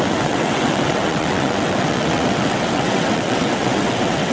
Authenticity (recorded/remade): remade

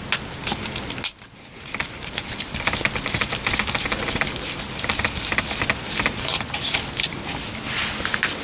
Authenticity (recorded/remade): recorded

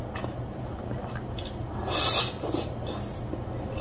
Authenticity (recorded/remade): recorded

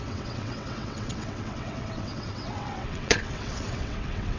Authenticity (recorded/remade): remade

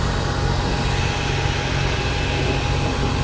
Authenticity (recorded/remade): recorded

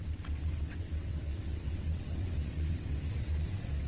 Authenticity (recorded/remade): remade